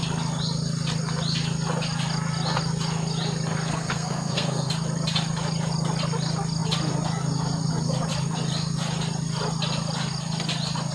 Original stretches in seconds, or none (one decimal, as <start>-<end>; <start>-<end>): 0.0-3.7; 4.7-10.9